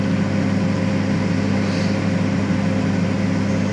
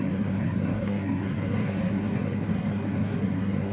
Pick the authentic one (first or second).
first